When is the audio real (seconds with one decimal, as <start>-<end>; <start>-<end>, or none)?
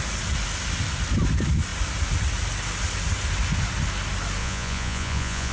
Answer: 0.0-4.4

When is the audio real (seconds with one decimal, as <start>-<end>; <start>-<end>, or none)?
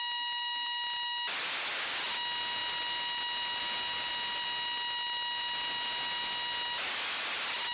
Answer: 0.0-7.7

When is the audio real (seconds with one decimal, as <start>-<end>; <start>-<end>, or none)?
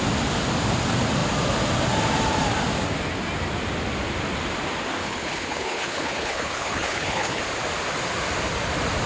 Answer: 0.0-5.0; 7.4-9.1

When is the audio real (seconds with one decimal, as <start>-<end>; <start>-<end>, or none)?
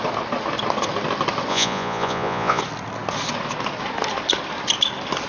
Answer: 0.0-1.5; 2.6-5.3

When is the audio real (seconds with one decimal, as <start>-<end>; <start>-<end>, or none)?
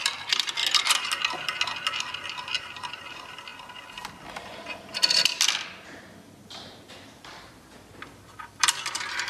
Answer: 0.6-2.0; 3.5-7.0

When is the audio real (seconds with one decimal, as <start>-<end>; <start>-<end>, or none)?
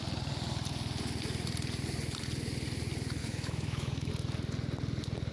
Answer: 0.0-3.2; 4.1-5.3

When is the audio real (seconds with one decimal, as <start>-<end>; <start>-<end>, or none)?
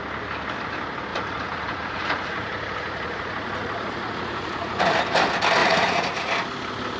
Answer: 0.0-1.1; 4.8-5.6; 6.3-7.0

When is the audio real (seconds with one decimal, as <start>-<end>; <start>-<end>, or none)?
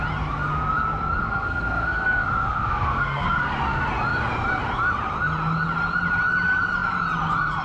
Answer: 0.0-1.2; 3.5-7.6